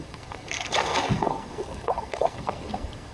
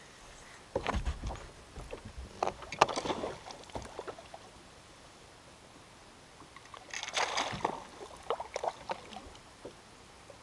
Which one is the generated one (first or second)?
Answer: first